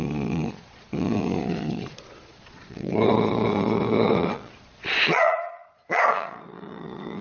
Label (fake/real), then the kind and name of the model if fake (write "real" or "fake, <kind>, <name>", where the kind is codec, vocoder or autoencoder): fake, vocoder, Vocos